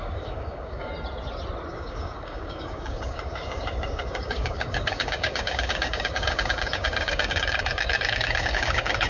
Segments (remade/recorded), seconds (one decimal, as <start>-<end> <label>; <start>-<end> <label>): 0.0-0.9 remade; 0.9-1.7 recorded; 1.7-9.1 remade